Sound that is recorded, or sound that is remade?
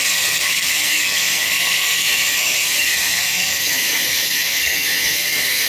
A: remade